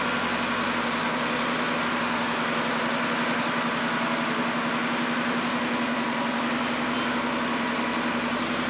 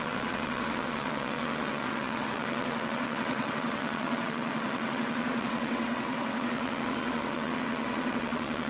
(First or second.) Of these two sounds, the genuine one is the first